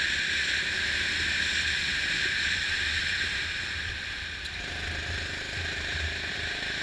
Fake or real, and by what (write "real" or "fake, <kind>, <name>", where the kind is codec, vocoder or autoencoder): real